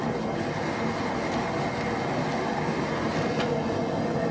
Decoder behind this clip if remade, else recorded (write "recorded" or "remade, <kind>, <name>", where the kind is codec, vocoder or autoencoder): recorded